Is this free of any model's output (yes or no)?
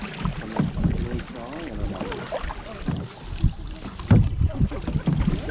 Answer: yes